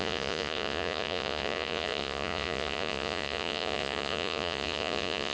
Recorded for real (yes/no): no